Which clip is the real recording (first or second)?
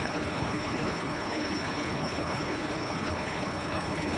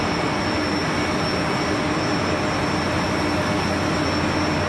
second